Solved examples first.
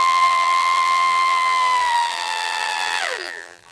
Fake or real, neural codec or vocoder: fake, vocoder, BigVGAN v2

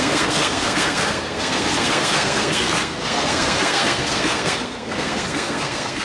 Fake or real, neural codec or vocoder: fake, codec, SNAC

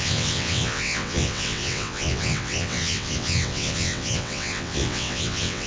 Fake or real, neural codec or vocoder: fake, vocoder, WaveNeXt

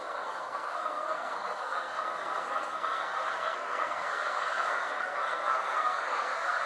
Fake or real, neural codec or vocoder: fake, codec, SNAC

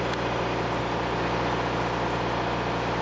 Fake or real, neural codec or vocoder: real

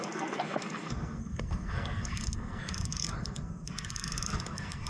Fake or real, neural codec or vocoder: fake, codec, SNAC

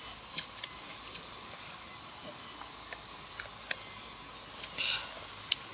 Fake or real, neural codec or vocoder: real